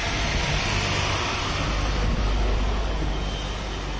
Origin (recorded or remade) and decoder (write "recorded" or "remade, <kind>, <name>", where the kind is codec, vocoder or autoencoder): recorded